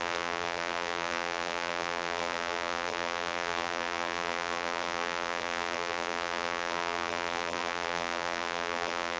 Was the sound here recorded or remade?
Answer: remade